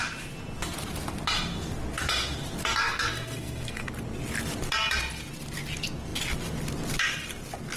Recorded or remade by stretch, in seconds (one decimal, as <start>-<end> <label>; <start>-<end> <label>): 0.0-2.8 recorded; 2.8-3.9 remade; 3.9-7.8 recorded